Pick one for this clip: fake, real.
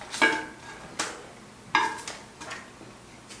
real